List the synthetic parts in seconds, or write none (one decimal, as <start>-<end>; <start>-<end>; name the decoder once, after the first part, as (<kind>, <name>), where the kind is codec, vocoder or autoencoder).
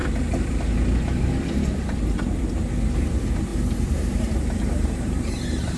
3.5-5.8 (vocoder, BigVGAN v2)